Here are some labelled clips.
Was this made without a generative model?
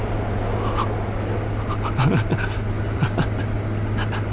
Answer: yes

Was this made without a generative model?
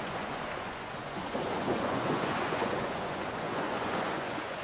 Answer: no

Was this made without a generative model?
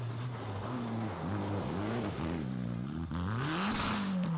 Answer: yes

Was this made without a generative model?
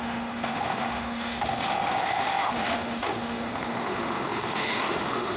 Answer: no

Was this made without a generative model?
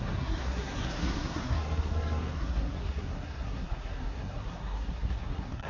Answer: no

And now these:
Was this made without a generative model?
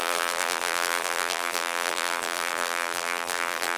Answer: no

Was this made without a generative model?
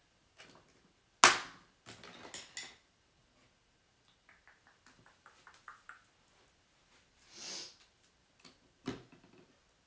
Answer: yes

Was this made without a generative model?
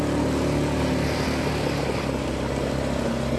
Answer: yes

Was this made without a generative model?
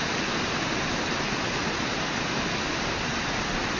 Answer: yes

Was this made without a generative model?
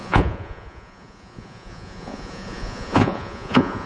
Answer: no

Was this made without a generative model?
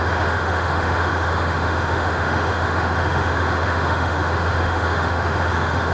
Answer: no